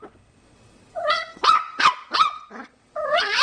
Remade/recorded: remade